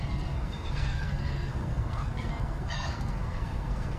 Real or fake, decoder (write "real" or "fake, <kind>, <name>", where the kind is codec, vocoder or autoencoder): fake, codec, SNAC